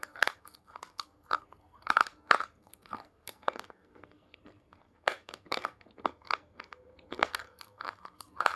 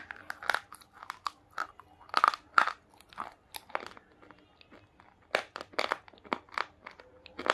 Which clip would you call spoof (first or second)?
first